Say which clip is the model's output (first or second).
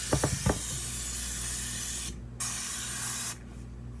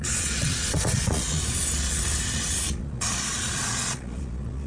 second